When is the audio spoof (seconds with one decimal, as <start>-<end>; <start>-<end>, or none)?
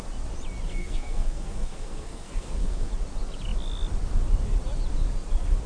0.7-2.9